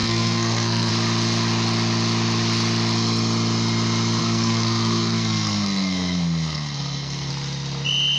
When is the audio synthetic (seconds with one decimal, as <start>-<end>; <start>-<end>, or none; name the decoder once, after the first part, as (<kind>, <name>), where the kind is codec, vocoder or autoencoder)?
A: 0.0-0.9 (codec, SNAC); 4.2-7.3